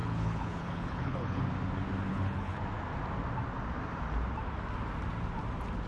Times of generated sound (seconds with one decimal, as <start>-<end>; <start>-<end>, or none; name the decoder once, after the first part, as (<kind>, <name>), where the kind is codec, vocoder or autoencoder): 0.0-1.4 (codec, HILCodec); 2.1-2.6